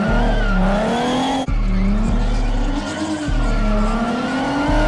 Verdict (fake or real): real